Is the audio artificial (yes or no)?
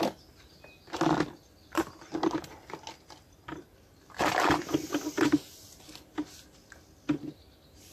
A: no